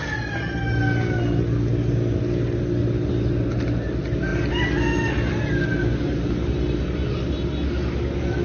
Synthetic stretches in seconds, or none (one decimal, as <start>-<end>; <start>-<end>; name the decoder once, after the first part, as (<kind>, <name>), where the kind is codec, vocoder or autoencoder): none